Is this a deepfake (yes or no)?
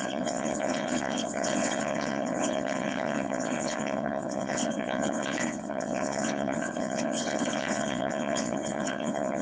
yes